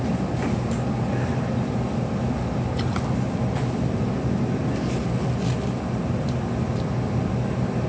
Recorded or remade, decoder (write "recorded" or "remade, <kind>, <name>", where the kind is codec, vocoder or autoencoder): recorded